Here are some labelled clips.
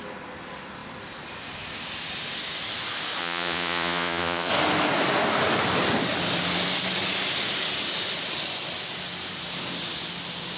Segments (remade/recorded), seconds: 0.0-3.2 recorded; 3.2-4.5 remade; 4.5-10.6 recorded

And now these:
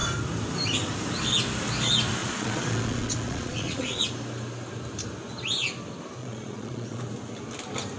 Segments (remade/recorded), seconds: 0.0-2.2 recorded; 2.2-4.1 remade; 4.1-6.2 recorded; 6.2-7.0 remade; 7.0-8.0 recorded

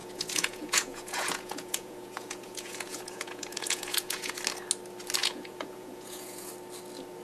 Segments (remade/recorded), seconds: 0.0-4.3 remade; 4.3-5.2 recorded; 5.2-6.5 remade; 6.5-7.2 recorded

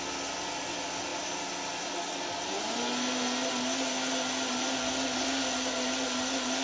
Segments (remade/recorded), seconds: 0.0-6.6 recorded

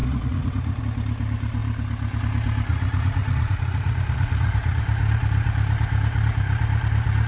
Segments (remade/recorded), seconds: 0.0-0.8 remade; 0.8-2.7 recorded; 2.7-4.8 remade; 4.8-7.3 recorded

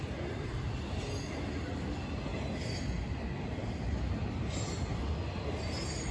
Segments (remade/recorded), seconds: 0.0-6.1 recorded